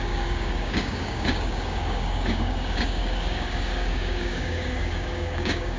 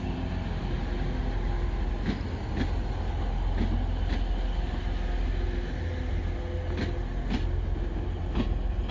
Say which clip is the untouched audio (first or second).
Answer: second